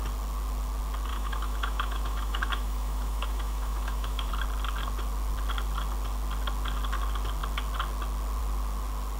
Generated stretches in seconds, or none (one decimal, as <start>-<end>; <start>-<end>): 1.1-4.3